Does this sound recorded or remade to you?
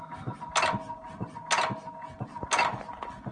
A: recorded